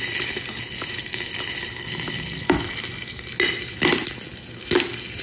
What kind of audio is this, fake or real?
real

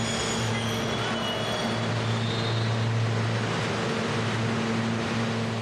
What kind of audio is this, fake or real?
real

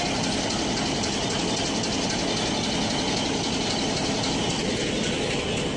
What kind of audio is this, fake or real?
real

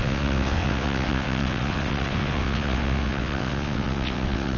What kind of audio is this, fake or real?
fake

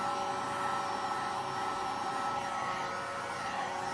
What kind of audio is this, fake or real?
real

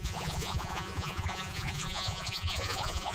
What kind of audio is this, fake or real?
fake